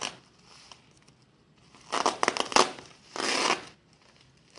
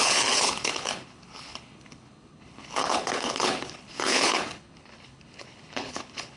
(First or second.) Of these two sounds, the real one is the first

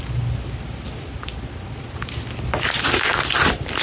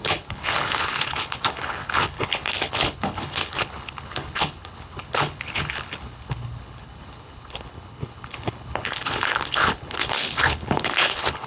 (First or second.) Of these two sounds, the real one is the first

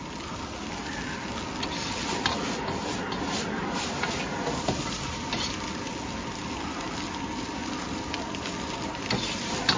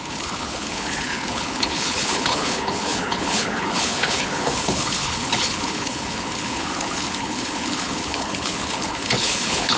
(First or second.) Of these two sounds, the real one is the first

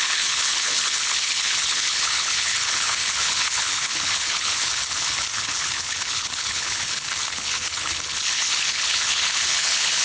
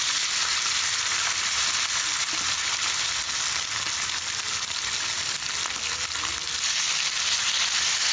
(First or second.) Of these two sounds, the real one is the second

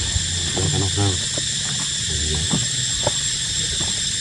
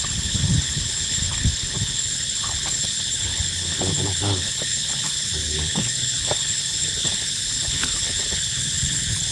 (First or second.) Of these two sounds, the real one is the first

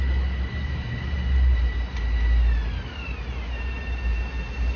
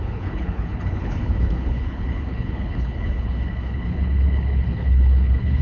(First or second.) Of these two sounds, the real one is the first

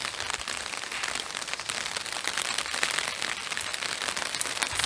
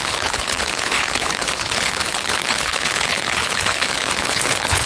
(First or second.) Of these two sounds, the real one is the first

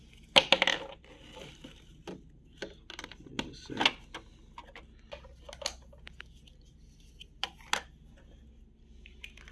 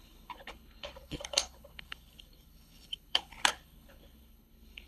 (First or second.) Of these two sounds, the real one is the first